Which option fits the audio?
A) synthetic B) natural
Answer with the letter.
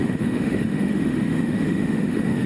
A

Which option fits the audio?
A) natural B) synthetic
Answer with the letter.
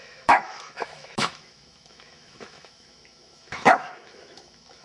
B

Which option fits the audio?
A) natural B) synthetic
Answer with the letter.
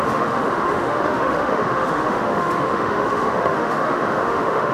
B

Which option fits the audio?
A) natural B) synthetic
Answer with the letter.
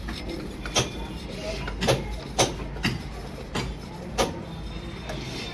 A